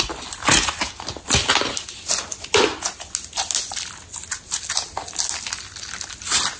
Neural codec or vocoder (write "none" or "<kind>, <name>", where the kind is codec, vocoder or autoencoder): none